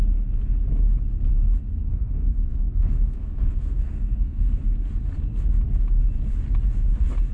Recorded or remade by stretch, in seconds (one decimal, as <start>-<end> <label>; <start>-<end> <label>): 0.0-1.9 recorded; 1.9-4.5 remade; 4.5-7.3 recorded